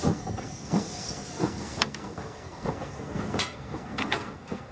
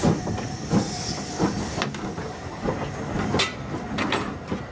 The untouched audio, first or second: second